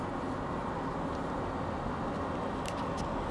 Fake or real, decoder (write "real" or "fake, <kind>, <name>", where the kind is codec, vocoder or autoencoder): real